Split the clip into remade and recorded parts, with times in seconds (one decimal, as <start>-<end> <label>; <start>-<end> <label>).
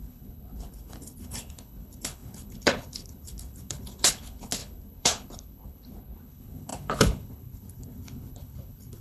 0.0-9.0 remade